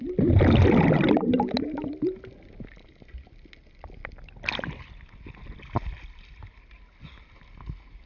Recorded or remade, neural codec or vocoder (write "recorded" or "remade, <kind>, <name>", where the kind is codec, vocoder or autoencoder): recorded